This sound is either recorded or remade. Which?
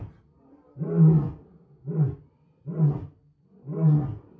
recorded